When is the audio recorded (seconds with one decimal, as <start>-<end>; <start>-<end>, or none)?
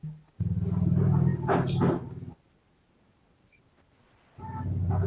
0.0-5.1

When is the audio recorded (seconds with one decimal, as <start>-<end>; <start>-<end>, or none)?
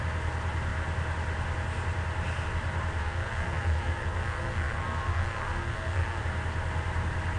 0.0-3.0; 6.2-7.4